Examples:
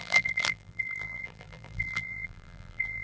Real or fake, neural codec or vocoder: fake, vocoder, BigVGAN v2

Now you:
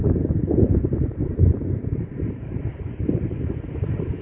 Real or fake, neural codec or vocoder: fake, vocoder, BigVGAN v2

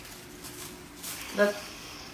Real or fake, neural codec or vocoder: fake, codec, DAC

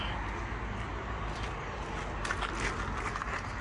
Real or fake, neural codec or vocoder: real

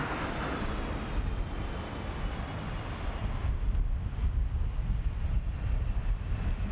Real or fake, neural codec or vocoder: real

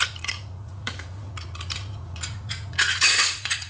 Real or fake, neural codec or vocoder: fake, vocoder, Vocos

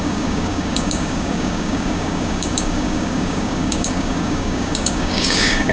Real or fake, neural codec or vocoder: fake, codec, DAC